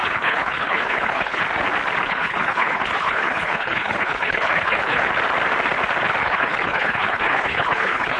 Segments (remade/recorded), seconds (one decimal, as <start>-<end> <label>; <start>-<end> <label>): 0.0-1.4 remade; 1.4-2.0 recorded; 2.0-5.1 remade; 5.1-6.2 recorded; 6.2-8.2 remade